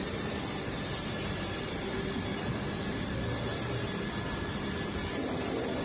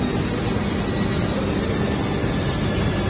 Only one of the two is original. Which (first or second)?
second